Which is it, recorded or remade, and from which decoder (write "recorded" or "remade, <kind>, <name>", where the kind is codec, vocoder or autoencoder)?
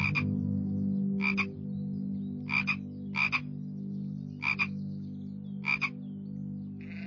recorded